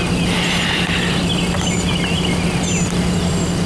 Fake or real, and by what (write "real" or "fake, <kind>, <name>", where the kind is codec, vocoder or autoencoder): real